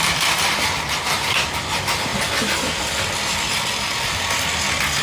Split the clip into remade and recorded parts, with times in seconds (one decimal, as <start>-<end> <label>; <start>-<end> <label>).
0.0-5.0 recorded